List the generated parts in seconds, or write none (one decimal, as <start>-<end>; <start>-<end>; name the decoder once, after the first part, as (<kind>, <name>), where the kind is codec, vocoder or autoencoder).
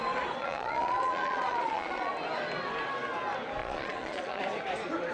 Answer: 0.4-2.1 (vocoder, Vocos); 3.6-4.4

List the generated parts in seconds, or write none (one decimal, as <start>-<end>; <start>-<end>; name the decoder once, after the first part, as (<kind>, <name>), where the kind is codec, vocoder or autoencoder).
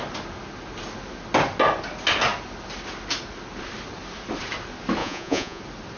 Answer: 5.0-5.6 (vocoder, Vocos)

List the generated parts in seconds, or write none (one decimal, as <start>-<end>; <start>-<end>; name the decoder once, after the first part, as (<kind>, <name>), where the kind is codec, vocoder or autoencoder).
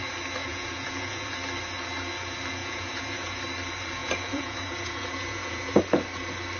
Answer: 0.4-1.3 (vocoder, Vocos); 2.6-3.4; 4.0-5.8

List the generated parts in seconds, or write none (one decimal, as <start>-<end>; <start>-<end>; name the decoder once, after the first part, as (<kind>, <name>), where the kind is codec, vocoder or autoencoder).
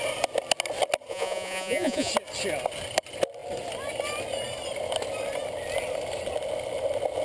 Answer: 1.1-2.1 (vocoder, Vocos)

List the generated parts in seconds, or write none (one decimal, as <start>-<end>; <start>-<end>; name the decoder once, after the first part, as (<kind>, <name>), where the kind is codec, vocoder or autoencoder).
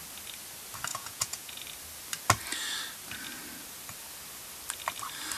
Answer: 0.9-1.6 (vocoder, Vocos)